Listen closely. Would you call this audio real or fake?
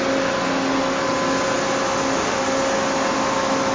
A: real